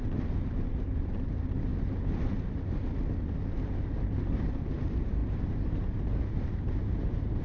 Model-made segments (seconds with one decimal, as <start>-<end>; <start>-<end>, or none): 0.0-1.7; 3.8-7.4